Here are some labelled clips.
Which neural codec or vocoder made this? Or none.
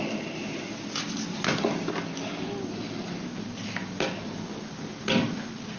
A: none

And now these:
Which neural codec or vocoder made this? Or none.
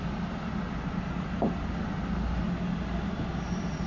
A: none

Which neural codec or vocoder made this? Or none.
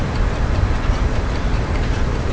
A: vocoder, BigVGAN v2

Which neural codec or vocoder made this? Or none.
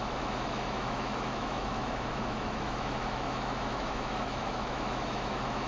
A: autoencoder, DAC-VAE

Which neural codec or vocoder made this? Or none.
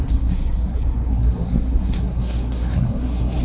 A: codec, SNAC